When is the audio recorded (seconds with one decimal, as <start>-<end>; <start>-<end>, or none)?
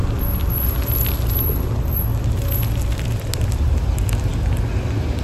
0.0-5.2